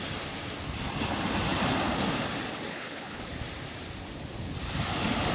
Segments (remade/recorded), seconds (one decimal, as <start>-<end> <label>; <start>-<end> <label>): 0.0-2.7 recorded; 2.7-3.2 remade; 3.2-5.3 recorded